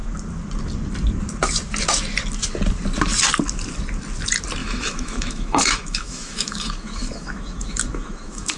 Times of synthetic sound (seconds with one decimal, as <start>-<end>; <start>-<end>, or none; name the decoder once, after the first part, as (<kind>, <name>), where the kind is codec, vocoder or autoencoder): 4.6-8.6 (autoencoder, DAC-VAE)